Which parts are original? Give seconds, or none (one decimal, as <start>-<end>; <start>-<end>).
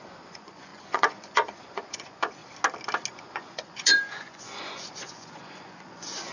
2.4-3.1